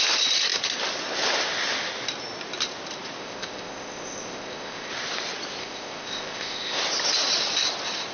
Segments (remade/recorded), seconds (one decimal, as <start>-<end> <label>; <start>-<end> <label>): 0.0-3.2 recorded; 3.2-4.9 remade; 4.9-5.6 recorded; 5.6-6.8 remade; 6.8-8.1 recorded